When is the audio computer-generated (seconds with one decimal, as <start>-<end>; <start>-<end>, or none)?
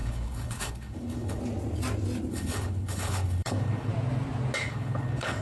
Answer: 0.0-1.4; 2.3-3.9; 4.6-5.4